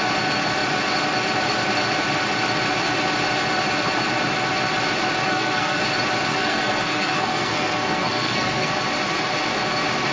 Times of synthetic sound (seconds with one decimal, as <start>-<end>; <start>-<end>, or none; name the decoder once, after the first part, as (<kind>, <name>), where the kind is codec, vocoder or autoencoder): 5.3-5.8 (codec, SNAC); 6.3-8.7